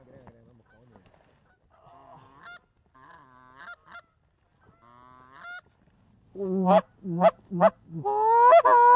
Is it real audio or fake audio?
real